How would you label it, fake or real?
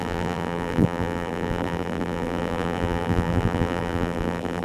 fake